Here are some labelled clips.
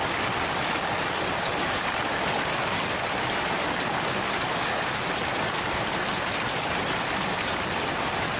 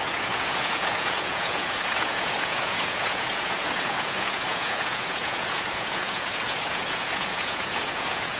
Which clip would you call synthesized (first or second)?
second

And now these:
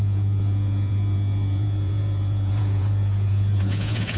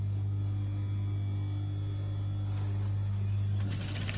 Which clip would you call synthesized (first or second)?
first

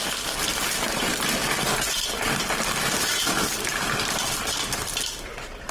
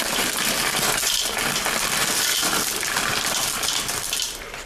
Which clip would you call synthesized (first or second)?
first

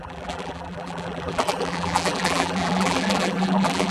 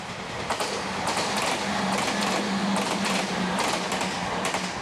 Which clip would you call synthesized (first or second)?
first